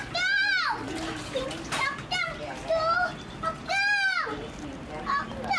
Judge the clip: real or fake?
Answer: real